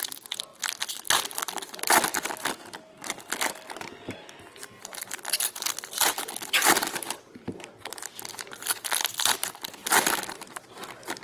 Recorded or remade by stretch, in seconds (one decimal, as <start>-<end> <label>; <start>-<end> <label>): 0.0-6.0 recorded; 6.0-7.7 remade; 7.7-9.8 recorded; 9.8-10.4 remade; 10.4-11.2 recorded